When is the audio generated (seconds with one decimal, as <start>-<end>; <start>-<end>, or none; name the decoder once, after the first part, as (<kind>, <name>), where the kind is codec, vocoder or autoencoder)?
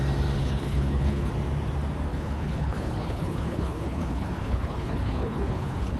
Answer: 0.4-1.3 (codec, HILCodec); 2.1-6.0